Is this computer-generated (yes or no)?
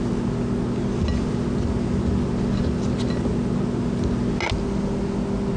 no